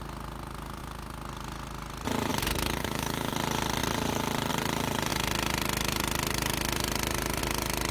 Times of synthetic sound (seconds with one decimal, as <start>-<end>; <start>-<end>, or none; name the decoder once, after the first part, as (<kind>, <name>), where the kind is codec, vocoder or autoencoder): 2.8-3.3 (autoencoder, DAC-VAE)